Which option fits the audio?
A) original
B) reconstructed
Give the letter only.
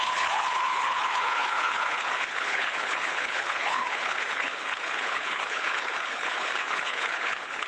B